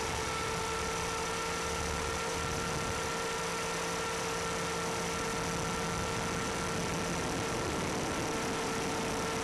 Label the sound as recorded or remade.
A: recorded